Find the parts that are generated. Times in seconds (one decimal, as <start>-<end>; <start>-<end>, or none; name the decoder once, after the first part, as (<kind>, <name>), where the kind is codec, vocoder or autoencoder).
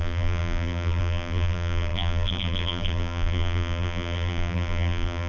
0.0-5.3 (vocoder, BigVGAN v2)